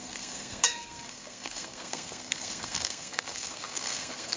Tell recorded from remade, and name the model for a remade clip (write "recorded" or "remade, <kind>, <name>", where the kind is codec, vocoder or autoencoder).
remade, codec, SNAC